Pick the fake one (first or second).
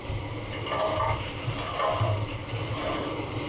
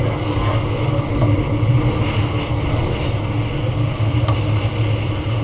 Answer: first